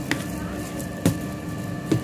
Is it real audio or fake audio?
real